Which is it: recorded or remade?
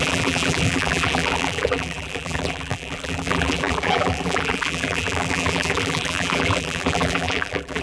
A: remade